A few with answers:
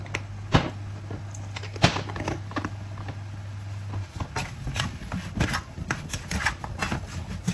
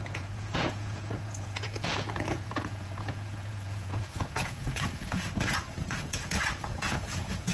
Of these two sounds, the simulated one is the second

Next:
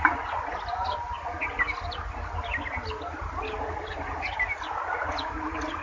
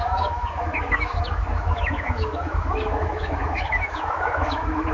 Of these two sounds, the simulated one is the second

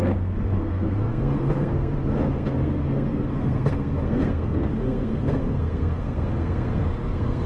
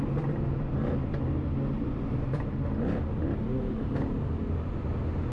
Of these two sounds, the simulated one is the first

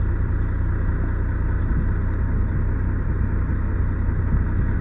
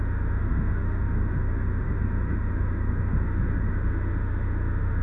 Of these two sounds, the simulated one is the second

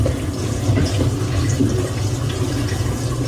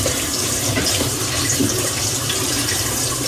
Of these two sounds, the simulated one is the second